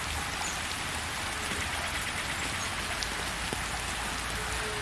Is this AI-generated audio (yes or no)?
no